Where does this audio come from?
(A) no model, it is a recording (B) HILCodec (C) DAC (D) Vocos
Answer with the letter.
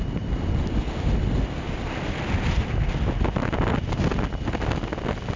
A